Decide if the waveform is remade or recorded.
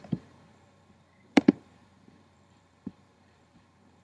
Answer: remade